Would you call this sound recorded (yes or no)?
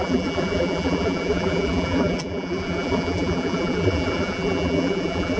no